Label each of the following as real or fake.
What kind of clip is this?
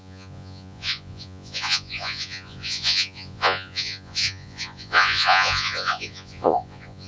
fake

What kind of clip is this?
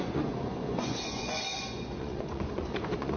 fake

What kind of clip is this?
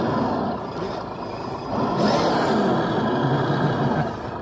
real